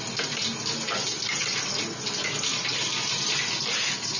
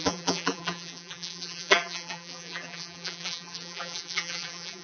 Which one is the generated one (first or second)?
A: second